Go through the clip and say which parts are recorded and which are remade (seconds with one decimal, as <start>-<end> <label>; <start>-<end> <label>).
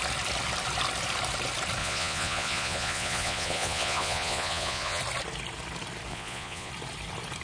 0.0-1.8 recorded; 1.8-5.0 remade; 5.0-6.1 recorded; 6.1-6.7 remade; 6.7-7.4 recorded